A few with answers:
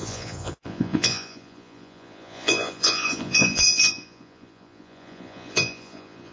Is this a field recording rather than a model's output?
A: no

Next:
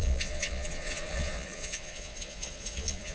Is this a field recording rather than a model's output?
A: no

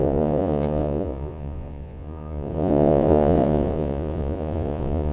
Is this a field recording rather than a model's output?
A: no